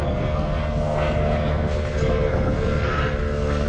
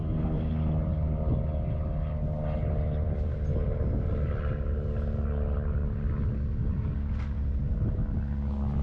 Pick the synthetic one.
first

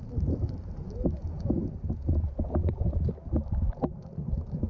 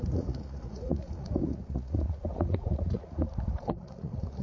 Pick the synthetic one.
second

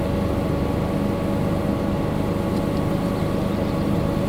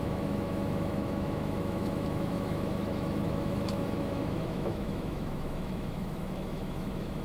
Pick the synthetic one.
second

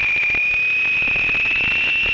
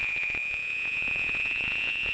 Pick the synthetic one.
second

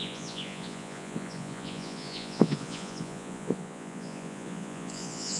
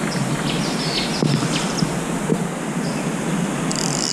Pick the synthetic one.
first